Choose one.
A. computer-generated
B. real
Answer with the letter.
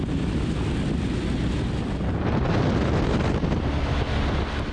B